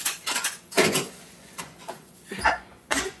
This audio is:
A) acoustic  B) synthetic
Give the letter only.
B